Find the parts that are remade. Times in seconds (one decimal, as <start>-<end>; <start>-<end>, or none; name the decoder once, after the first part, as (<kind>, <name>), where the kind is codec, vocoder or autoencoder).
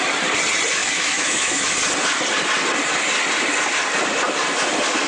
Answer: 0.8-1.7 (autoencoder, DAC-VAE)